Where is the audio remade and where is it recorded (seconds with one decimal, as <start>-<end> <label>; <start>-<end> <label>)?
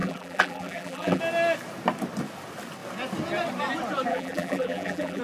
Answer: 0.0-1.2 remade; 1.2-4.1 recorded; 4.1-5.2 remade